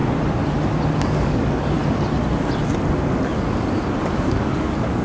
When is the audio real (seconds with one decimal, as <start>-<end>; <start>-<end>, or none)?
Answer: 0.0-1.0; 1.8-4.0